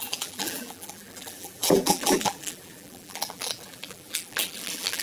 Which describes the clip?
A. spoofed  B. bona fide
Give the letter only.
A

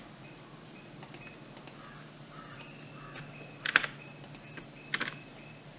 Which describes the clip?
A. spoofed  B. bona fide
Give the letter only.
B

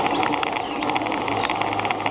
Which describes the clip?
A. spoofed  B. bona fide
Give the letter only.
B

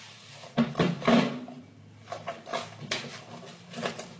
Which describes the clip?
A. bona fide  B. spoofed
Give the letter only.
A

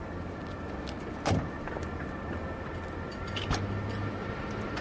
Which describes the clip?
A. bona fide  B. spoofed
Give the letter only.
A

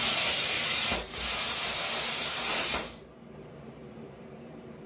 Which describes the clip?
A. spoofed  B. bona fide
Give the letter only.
A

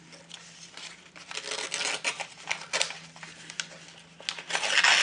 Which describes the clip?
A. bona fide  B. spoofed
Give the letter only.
A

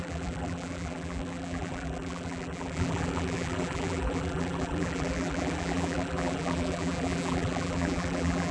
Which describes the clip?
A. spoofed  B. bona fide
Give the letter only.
A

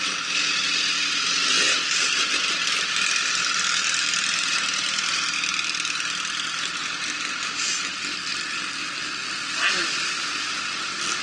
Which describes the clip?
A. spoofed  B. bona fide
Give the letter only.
B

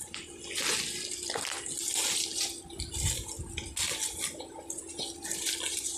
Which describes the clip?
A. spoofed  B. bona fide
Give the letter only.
B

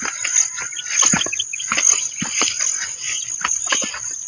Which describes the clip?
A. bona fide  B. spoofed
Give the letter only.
A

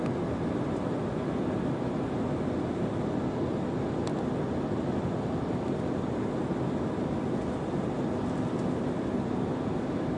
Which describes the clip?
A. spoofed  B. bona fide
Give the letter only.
B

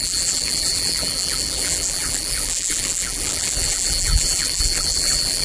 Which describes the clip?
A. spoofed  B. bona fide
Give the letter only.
A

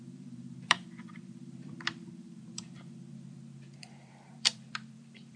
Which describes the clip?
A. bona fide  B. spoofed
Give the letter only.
B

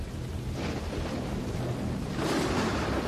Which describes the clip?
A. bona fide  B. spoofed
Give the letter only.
B